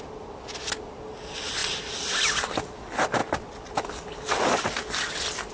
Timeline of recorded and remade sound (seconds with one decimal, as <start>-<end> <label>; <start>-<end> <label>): 0.0-5.5 recorded